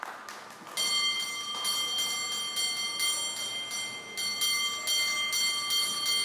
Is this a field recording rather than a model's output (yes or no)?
yes